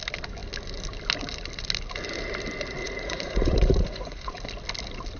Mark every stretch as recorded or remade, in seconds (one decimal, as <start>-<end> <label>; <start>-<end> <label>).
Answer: 0.0-2.8 recorded; 2.8-4.4 remade; 4.4-5.2 recorded